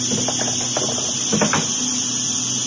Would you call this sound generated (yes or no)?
no